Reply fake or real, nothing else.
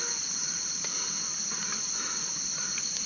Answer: real